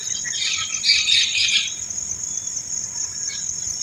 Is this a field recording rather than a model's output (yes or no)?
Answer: yes